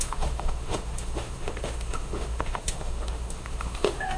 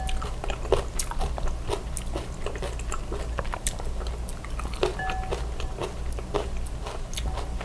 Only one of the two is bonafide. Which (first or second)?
second